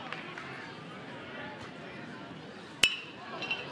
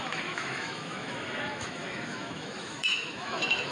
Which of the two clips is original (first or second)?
first